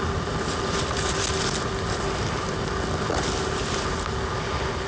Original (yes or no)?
yes